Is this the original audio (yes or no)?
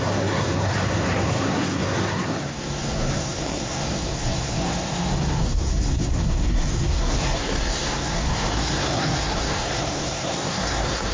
no